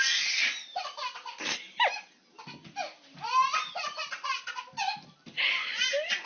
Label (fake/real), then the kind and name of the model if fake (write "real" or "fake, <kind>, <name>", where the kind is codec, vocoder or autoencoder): real